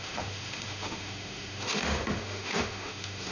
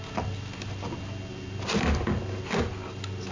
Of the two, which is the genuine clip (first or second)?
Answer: second